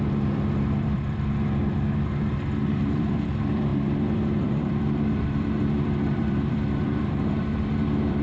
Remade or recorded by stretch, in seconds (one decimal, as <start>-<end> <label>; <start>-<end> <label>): 0.0-1.6 remade; 1.6-2.7 recorded; 2.7-8.2 remade